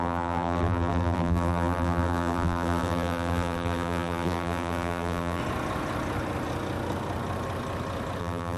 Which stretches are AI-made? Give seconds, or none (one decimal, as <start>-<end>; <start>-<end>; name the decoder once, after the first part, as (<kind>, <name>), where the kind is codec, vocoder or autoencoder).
0.0-5.4 (vocoder, BigVGAN v2); 8.2-8.6